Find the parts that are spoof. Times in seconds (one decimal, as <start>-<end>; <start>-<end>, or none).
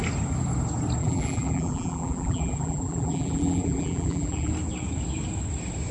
1.0-4.5